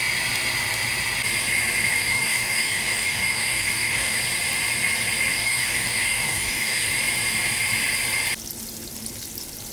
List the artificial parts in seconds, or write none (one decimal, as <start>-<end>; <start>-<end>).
1.9-4.2; 5.3-6.9